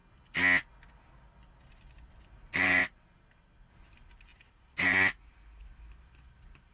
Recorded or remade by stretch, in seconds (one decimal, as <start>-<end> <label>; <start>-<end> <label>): 0.0-2.1 recorded; 2.1-2.8 remade; 2.8-3.7 recorded; 3.7-6.7 remade